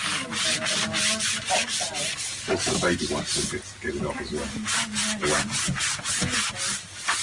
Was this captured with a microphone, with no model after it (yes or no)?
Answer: yes